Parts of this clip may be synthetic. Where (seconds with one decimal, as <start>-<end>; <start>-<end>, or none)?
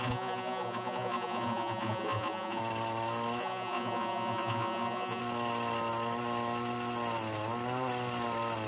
0.0-2.6; 3.4-5.2